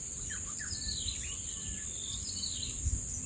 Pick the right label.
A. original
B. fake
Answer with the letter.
A